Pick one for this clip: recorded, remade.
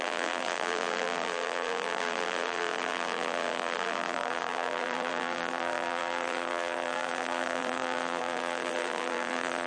remade